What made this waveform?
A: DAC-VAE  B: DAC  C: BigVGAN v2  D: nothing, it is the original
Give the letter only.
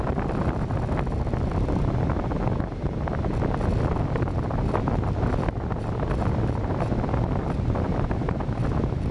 D